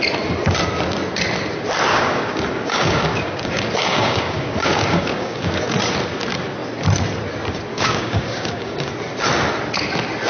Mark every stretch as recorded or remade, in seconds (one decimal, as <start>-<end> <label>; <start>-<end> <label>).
0.0-1.9 recorded; 1.9-5.6 remade; 5.6-7.7 recorded; 7.7-8.9 remade; 8.9-10.3 recorded